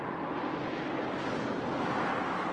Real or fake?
real